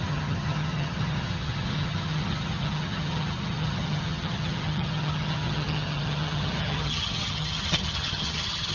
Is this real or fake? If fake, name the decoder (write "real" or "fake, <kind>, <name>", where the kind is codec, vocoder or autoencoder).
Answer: fake, vocoder, HiFi-GAN